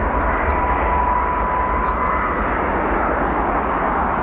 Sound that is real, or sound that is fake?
real